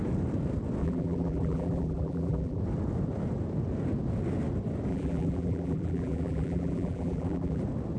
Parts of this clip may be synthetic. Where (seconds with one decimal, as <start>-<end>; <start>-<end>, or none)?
0.8-2.6; 4.9-7.6